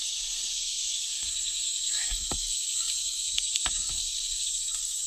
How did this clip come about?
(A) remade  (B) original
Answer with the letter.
A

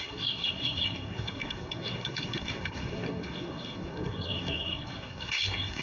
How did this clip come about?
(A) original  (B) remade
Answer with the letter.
B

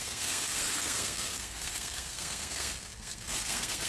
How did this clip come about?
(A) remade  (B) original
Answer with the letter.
A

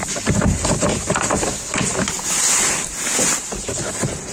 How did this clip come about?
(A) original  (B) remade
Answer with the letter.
A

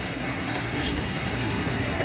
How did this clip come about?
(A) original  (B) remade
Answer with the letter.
B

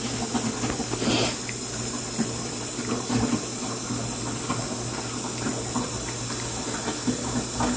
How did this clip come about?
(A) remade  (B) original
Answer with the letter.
B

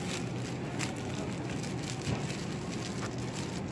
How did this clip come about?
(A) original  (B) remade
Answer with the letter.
A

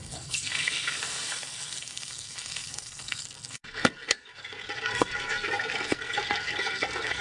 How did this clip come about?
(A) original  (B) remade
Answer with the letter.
B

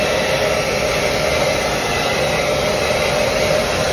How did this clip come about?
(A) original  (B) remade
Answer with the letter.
A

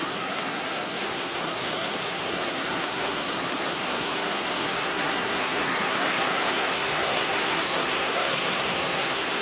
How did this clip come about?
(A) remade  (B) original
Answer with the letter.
A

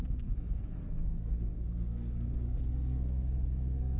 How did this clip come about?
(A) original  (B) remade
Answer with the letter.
B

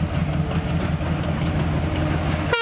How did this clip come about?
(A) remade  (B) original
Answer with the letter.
B